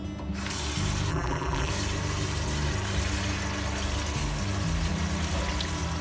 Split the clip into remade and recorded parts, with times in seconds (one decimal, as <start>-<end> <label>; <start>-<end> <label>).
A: 0.0-1.1 recorded; 1.1-1.7 remade; 1.7-6.0 recorded